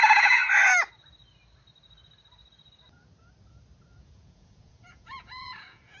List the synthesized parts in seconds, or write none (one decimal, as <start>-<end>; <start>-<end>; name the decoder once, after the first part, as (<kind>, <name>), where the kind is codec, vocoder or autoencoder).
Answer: 0.0-0.4 (vocoder, Vocos); 4.0-6.0